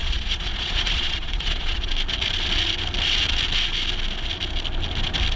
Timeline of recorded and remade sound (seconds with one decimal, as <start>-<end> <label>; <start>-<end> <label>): 0.0-1.9 remade; 1.9-5.4 recorded